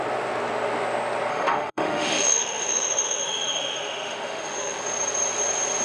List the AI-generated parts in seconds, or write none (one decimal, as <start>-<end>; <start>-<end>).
1.3-4.8